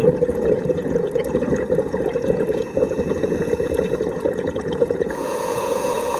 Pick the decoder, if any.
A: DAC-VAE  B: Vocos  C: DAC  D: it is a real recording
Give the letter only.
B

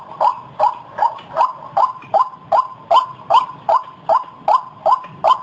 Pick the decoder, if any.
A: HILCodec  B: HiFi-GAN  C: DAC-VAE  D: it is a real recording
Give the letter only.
D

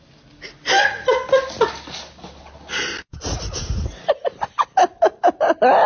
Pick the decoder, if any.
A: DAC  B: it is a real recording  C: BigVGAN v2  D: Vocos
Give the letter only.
B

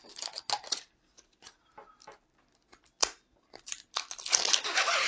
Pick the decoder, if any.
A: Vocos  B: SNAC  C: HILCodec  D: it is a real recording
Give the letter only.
D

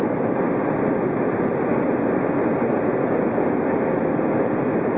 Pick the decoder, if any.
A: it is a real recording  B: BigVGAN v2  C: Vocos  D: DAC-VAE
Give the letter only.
A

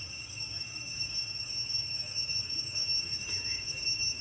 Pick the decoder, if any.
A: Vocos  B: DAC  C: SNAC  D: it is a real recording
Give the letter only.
B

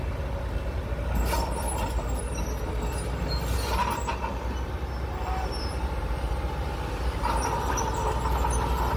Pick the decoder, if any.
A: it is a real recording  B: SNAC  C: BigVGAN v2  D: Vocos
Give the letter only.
A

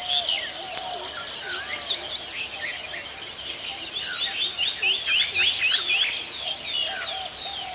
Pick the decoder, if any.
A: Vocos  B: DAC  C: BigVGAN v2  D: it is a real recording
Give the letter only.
D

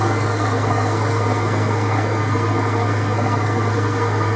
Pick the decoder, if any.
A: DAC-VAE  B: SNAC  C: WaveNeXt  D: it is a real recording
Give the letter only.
B